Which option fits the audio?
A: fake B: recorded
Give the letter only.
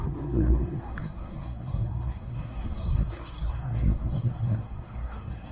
A